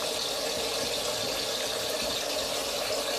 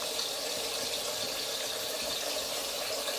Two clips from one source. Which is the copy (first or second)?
second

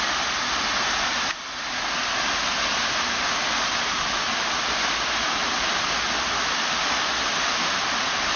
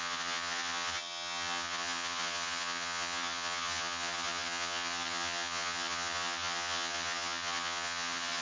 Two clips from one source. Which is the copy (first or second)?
second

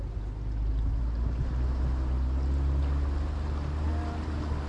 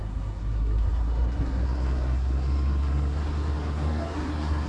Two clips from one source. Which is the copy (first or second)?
second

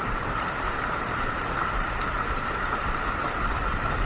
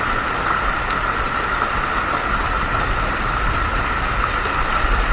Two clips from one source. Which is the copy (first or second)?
first